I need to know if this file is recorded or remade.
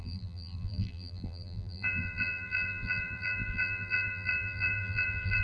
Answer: remade